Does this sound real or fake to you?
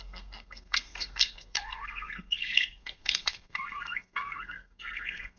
fake